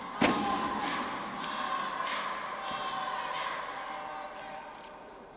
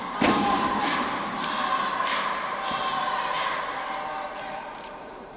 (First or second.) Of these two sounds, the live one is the first